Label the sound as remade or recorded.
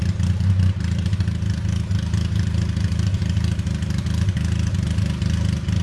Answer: recorded